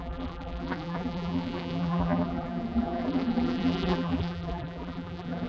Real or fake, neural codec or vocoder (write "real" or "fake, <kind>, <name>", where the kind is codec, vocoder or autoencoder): fake, vocoder, BigVGAN v2